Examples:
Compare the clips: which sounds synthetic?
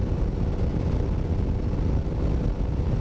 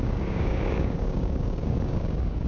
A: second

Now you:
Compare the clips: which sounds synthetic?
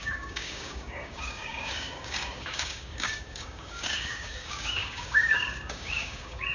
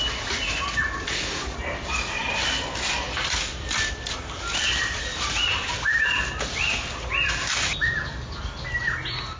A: first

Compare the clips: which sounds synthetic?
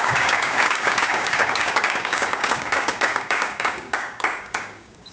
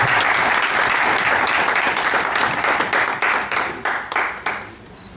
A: first